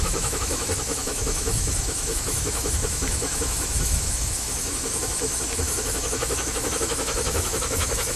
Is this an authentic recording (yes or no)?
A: no